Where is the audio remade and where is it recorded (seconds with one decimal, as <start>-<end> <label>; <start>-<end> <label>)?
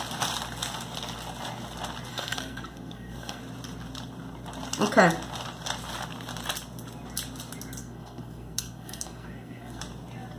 0.0-2.1 recorded; 2.1-3.4 remade; 3.4-7.8 recorded; 7.8-9.8 remade; 9.8-10.4 recorded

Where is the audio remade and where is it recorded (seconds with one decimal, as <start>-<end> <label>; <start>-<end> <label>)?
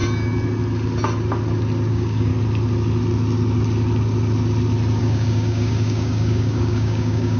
0.0-1.9 recorded; 1.9-2.3 remade; 2.3-5.0 recorded; 5.0-7.4 remade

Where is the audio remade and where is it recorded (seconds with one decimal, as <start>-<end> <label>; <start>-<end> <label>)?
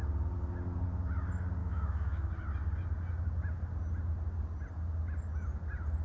0.0-1.6 recorded; 1.6-2.3 remade; 2.3-6.0 recorded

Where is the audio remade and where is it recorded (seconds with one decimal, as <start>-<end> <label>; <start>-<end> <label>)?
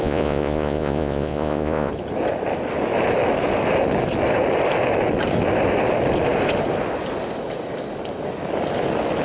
0.0-1.9 remade; 1.9-9.2 recorded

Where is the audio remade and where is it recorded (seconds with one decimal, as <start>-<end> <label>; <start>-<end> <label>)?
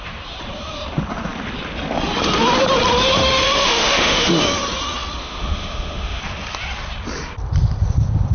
0.0-3.2 recorded; 3.2-4.3 remade; 4.3-5.2 recorded; 5.2-6.2 remade; 6.2-8.3 recorded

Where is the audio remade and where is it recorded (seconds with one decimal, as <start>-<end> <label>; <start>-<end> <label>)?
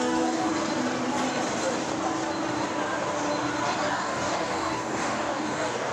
0.0-0.5 remade; 0.5-3.9 recorded; 3.9-5.9 remade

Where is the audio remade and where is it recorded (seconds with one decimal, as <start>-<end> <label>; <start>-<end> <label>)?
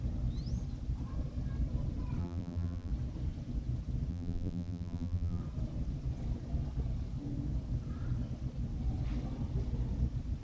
0.0-2.2 recorded; 2.2-2.9 remade; 2.9-4.1 recorded; 4.1-5.4 remade; 5.4-10.4 recorded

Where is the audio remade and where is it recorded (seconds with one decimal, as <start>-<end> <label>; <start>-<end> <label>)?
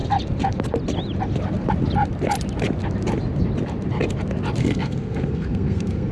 0.0-4.6 recorded; 4.6-6.1 remade